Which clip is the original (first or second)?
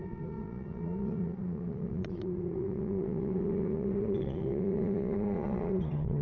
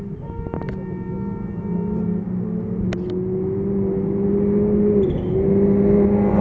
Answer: second